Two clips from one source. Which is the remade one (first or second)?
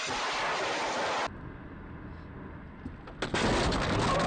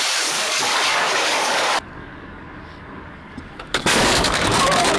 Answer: second